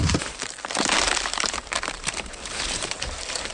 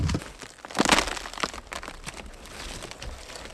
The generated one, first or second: first